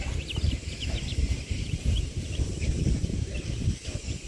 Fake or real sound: fake